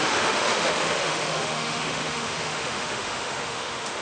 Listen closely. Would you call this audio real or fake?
fake